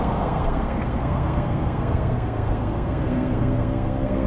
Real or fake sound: fake